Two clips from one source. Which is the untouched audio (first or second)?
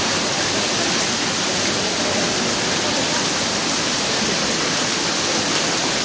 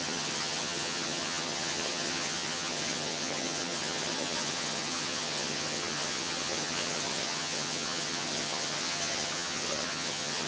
first